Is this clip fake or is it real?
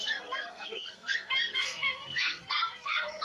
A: fake